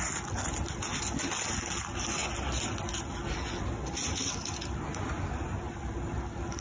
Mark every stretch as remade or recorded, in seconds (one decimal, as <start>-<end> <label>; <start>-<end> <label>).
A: 0.0-6.6 recorded